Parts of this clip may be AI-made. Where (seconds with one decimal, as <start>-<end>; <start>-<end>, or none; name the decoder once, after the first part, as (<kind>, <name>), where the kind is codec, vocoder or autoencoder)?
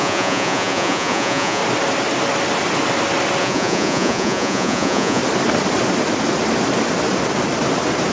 0.0-1.6 (vocoder, Vocos); 3.4-5.2